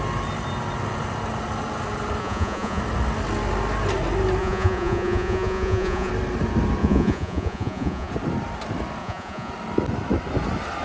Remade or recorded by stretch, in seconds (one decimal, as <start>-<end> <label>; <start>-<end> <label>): 0.0-2.2 recorded; 2.2-2.8 remade; 2.8-4.4 recorded; 4.4-6.1 remade; 6.1-6.8 recorded; 6.8-8.1 remade; 8.1-9.0 recorded; 9.0-9.5 remade; 9.5-10.8 recorded